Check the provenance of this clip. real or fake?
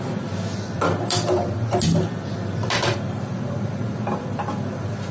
real